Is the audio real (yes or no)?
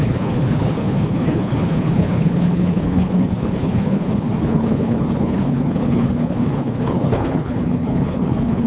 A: no